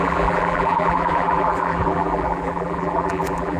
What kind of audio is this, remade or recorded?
remade